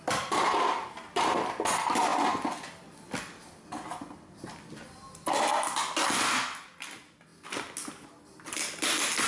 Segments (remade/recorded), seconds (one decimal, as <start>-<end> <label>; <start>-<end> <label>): 0.0-9.3 recorded

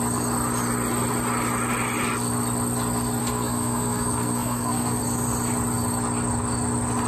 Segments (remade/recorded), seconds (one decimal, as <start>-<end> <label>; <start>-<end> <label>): 0.0-3.2 recorded; 3.2-5.0 remade; 5.0-7.1 recorded

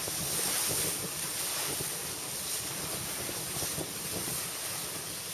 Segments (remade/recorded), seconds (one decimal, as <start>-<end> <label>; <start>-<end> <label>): 0.0-5.3 recorded

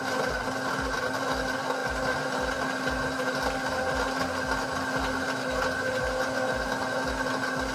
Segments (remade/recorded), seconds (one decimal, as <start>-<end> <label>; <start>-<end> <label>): 0.0-7.7 recorded

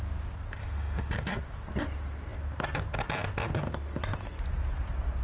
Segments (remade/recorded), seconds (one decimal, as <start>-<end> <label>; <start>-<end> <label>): 0.0-0.6 recorded; 0.6-1.1 remade; 1.1-5.2 recorded

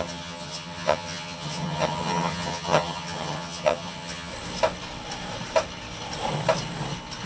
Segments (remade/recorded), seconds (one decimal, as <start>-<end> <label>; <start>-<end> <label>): 0.0-4.3 remade; 4.3-7.3 recorded

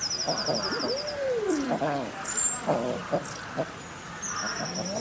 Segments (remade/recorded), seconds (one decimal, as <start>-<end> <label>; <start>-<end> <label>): 0.0-3.0 remade; 3.0-5.0 recorded